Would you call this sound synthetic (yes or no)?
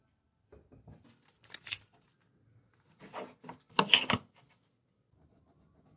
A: no